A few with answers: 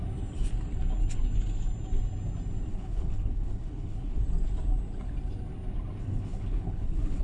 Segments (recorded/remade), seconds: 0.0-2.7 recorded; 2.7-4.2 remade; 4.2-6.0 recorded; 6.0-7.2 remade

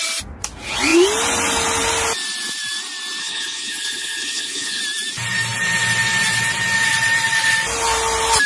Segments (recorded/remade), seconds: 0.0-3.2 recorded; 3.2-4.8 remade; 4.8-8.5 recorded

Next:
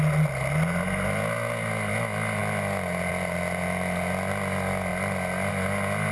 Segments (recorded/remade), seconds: 0.0-6.1 recorded